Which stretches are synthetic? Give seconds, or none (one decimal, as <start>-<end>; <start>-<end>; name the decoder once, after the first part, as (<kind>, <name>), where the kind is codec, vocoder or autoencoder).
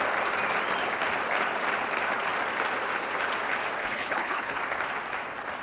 3.8-4.6 (codec, HILCodec)